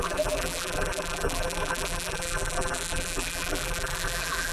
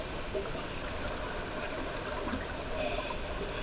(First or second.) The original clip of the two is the second